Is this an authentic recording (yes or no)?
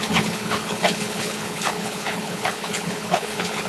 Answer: no